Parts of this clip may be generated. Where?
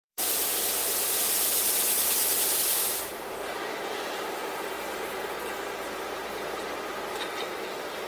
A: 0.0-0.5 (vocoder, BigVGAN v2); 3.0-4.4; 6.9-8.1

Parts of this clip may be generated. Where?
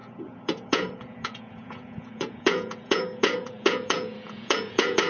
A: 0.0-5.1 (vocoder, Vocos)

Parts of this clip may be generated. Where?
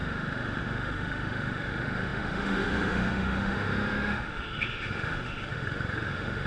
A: 0.0-6.5 (autoencoder, DAC-VAE)